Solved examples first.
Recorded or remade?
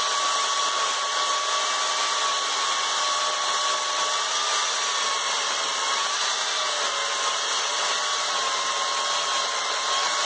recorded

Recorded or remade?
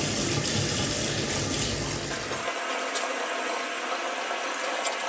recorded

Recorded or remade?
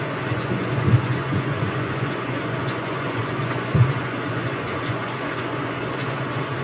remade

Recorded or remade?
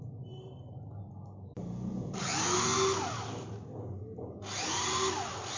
recorded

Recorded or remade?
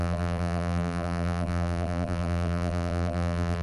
remade